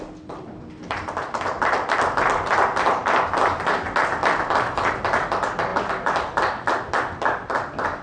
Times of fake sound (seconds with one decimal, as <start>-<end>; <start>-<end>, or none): none